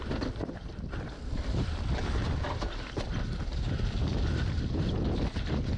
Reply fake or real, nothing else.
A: fake